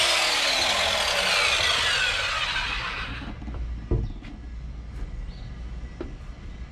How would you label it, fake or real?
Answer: real